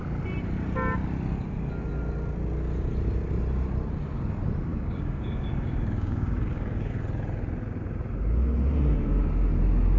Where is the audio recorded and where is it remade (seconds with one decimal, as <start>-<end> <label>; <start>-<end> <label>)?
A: 0.0-4.7 recorded; 4.7-6.9 remade; 6.9-10.0 recorded